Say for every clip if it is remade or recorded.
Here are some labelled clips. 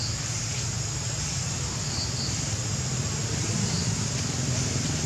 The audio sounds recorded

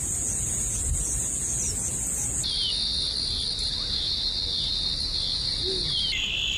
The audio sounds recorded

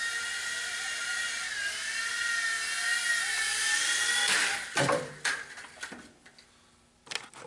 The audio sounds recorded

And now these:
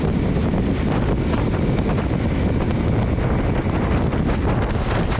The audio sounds recorded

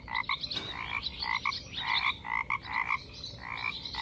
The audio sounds recorded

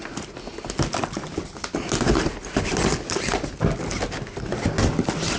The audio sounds recorded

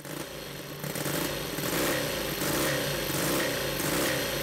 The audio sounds recorded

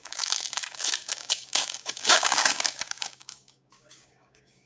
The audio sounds remade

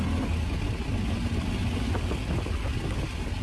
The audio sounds recorded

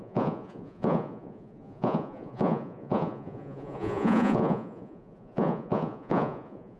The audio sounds remade